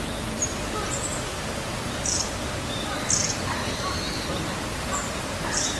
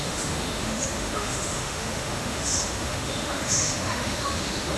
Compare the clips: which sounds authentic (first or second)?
first